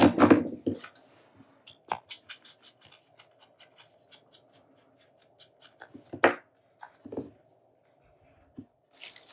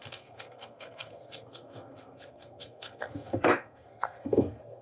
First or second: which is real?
first